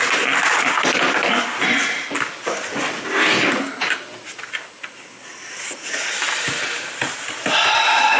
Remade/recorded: recorded